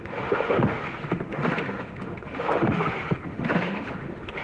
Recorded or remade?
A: remade